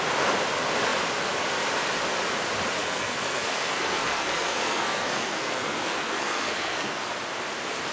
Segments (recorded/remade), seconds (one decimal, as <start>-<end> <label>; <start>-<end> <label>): 0.0-2.8 recorded; 2.8-7.1 remade; 7.1-7.9 recorded